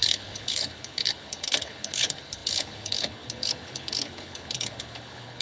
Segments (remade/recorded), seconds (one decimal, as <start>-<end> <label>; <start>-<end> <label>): 0.0-5.4 remade